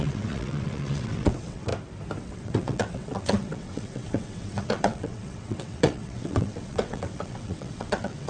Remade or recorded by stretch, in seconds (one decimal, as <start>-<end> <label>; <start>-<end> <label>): 0.0-1.7 remade; 1.7-2.2 recorded; 2.2-8.3 remade